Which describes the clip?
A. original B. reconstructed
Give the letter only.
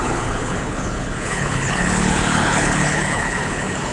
B